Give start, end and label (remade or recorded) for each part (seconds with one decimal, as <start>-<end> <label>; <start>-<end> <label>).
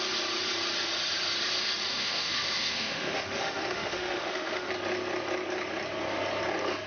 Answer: 0.0-1.9 recorded; 1.9-4.7 remade; 4.7-6.9 recorded